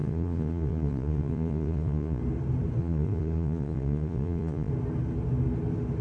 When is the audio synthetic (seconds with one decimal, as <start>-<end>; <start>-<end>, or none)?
0.0-2.2; 2.8-4.7